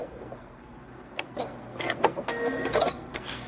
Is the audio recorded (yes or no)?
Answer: no